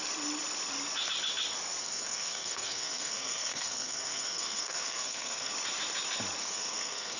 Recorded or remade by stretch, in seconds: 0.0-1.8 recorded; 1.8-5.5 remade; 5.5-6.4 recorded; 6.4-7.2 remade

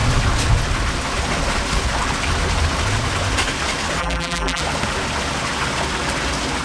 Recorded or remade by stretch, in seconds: 0.0-4.0 recorded; 4.0-4.6 remade; 4.6-6.6 recorded

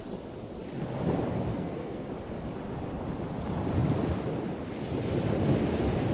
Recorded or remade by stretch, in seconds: 0.0-1.5 recorded; 1.5-2.1 remade; 2.1-6.1 recorded